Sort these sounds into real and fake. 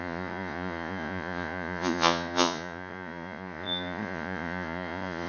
fake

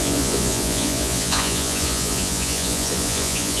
fake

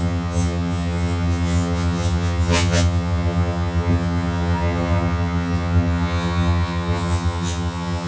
fake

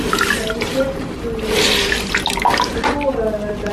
fake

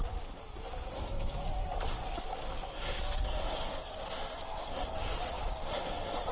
real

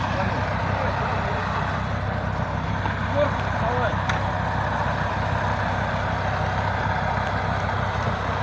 real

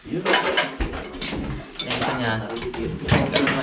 real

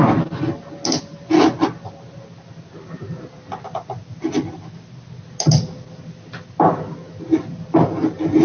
real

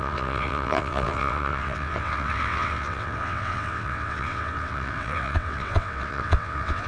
fake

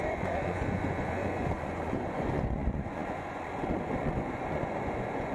fake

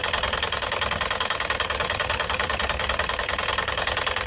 real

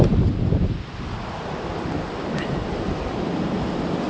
real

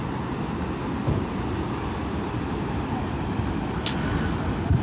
real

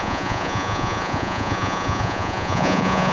fake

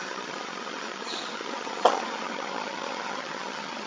fake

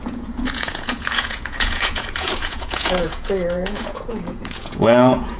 fake